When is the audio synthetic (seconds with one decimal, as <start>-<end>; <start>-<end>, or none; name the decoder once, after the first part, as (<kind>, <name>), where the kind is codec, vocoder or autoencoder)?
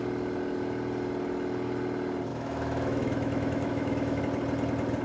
2.3-4.2 (autoencoder, DAC-VAE)